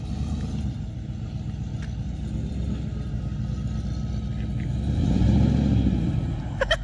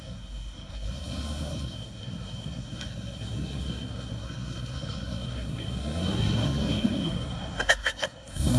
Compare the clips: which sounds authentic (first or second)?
first